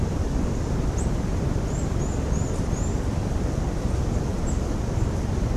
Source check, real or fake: real